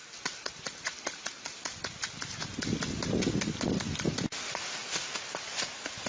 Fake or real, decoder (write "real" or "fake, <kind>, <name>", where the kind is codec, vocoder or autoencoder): real